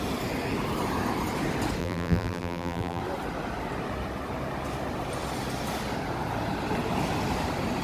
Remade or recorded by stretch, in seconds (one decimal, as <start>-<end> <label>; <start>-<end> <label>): 0.0-1.8 recorded; 1.8-3.0 remade; 3.0-7.8 recorded